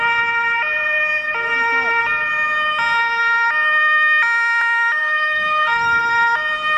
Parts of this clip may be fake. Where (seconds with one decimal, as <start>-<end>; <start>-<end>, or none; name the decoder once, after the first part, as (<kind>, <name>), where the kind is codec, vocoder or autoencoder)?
5.0-6.0 (codec, DAC)